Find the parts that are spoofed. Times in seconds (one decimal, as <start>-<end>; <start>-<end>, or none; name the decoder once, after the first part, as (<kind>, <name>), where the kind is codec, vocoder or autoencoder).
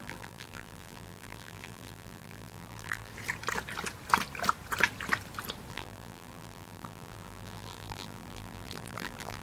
0.0-3.1 (vocoder, BigVGAN v2); 5.7-9.4